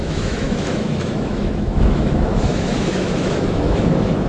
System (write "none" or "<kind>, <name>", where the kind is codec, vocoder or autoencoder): autoencoder, DAC-VAE